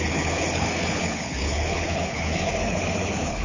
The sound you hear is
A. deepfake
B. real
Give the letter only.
A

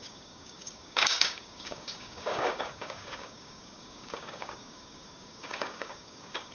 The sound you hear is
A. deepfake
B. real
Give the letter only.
A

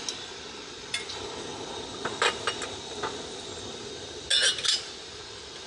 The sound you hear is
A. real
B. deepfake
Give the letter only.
A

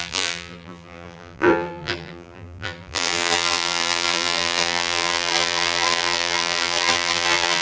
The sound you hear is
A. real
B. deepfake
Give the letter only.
B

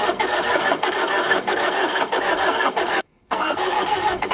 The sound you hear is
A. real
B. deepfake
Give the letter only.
B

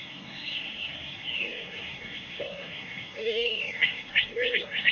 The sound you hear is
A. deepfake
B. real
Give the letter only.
A